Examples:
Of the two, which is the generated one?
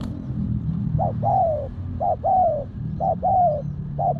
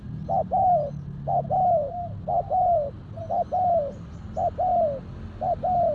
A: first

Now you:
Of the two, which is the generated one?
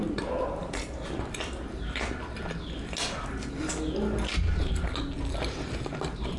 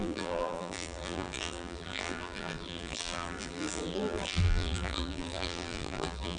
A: second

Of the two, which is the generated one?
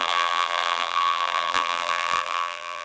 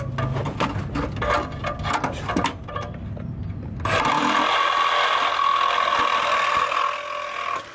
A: first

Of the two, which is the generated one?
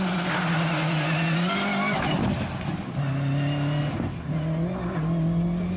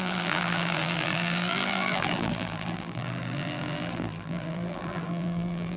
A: second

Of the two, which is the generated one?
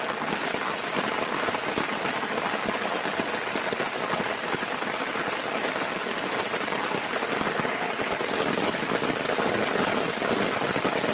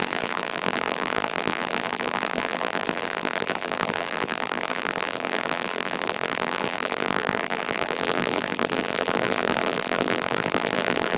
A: second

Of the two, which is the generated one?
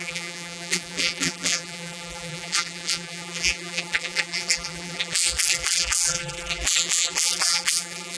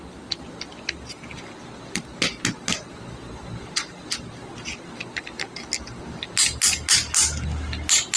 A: first